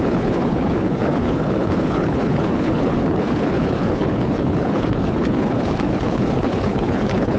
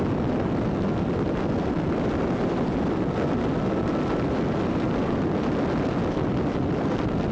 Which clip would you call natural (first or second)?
second